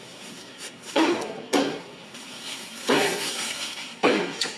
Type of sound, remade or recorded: remade